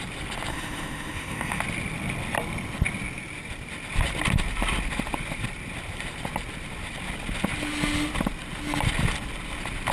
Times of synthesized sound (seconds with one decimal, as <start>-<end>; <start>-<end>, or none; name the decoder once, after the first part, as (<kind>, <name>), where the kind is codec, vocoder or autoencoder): 0.5-1.6 (autoencoder, DAC-VAE)